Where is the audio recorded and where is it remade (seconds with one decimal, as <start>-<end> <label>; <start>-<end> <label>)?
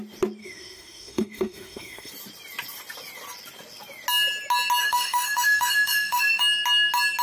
0.0-0.4 recorded; 0.4-2.1 remade; 2.1-4.8 recorded; 4.8-6.4 remade; 6.4-7.2 recorded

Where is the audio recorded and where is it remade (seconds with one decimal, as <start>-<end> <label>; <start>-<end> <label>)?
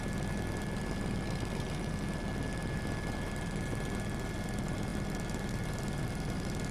0.0-6.7 recorded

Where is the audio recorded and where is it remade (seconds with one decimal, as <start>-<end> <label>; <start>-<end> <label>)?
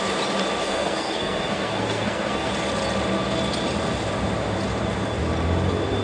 0.0-0.6 recorded; 0.6-2.5 remade; 2.5-6.0 recorded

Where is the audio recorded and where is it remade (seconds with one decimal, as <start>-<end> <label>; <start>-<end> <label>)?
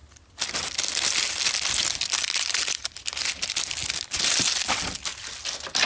0.0-5.9 recorded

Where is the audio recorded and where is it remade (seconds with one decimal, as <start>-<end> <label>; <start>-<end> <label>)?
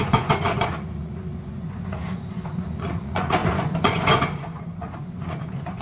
0.0-5.8 remade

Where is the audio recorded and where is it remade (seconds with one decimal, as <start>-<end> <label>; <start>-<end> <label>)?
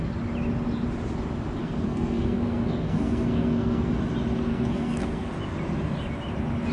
0.0-1.6 recorded; 1.6-3.9 remade; 3.9-4.5 recorded; 4.5-5.3 remade; 5.3-6.7 recorded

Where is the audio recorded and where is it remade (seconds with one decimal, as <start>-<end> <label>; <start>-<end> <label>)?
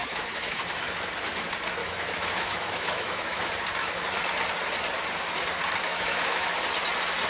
0.0-0.6 remade; 0.6-1.8 recorded; 1.8-3.5 remade; 3.5-5.9 recorded; 5.9-6.5 remade; 6.5-7.3 recorded